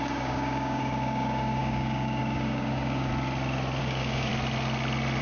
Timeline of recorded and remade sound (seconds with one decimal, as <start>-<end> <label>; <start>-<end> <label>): 0.0-3.1 remade; 3.1-3.8 recorded; 3.8-4.3 remade; 4.3-5.2 recorded